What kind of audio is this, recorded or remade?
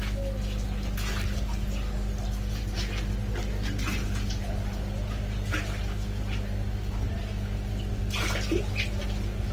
recorded